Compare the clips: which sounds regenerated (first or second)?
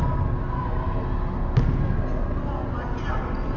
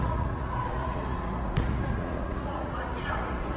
second